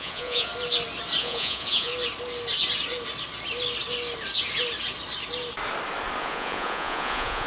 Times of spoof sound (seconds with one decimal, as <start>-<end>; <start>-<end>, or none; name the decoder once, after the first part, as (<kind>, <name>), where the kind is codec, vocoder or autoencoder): 0.0-0.5 (vocoder, Vocos); 1.2-1.9; 6.2-7.5